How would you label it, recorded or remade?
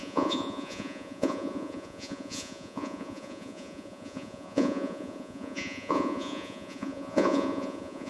remade